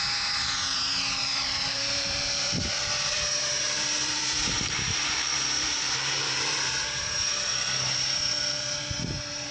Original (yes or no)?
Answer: no